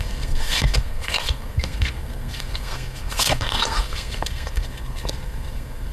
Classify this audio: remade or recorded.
remade